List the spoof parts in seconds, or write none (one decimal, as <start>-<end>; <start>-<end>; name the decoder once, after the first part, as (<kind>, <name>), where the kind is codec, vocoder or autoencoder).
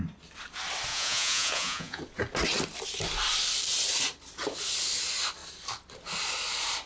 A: 0.9-2.0 (vocoder, Vocos)